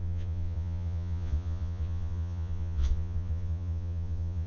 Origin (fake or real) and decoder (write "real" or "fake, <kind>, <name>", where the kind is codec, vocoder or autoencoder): fake, vocoder, Vocos